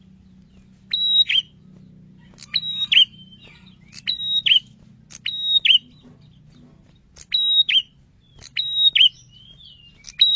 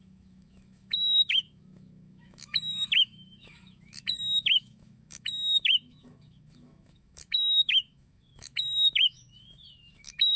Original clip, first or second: first